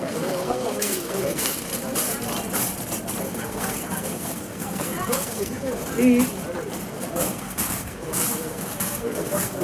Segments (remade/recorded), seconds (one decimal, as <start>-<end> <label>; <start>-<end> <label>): 0.0-1.7 remade; 1.7-3.2 recorded; 3.2-5.8 remade; 5.8-6.9 recorded; 6.9-9.6 remade